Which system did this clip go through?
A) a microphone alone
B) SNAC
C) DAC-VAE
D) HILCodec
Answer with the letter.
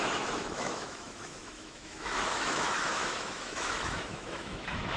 C